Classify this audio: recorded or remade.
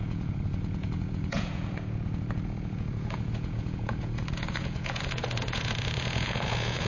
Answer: remade